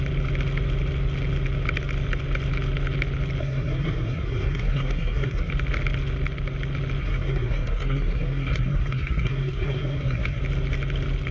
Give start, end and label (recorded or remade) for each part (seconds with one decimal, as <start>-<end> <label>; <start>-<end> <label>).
0.0-3.4 recorded; 3.4-5.5 remade; 5.5-7.0 recorded; 7.0-10.4 remade; 10.4-11.3 recorded